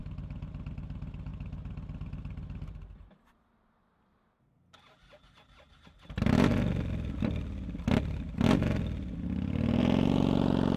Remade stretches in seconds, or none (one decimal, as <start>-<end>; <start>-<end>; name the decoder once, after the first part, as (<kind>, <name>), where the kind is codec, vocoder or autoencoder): none

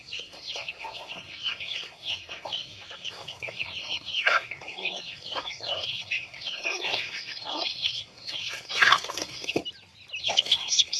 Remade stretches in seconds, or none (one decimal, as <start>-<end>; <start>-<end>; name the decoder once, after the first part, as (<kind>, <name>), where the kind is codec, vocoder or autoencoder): 0.0-9.6 (codec, SNAC); 10.2-11.0

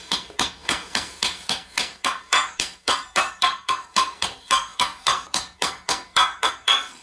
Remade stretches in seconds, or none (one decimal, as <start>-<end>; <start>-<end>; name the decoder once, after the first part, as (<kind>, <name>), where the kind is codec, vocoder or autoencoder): 0.0-7.0 (codec, SNAC)

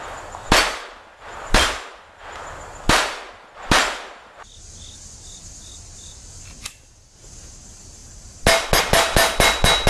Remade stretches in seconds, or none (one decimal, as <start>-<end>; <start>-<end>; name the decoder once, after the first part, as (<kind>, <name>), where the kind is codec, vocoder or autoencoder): none

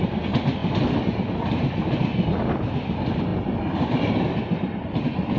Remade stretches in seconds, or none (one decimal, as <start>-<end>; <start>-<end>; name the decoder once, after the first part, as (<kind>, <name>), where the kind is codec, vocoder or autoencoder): none

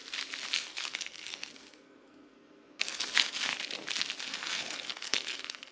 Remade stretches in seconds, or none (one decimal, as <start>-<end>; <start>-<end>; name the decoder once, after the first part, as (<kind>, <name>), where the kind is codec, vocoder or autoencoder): 0.5-3.5 (codec, SNAC); 4.2-5.7

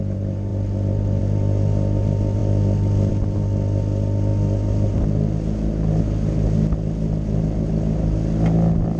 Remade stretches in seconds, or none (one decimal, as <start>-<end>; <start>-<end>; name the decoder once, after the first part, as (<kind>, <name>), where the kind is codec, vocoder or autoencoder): none

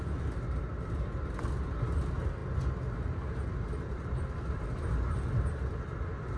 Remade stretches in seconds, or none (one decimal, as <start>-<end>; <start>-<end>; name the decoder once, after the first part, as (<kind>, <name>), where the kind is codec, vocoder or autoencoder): none